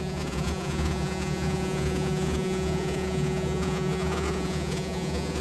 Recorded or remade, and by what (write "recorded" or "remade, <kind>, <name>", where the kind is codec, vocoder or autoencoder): remade, vocoder, Vocos